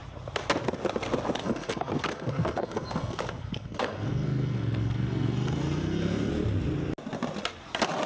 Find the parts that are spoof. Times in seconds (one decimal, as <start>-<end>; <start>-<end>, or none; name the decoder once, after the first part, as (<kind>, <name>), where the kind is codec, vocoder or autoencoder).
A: 1.4-6.3 (codec, SNAC)